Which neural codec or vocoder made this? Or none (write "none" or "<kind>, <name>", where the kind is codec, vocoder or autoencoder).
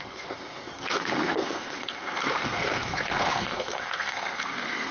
codec, SNAC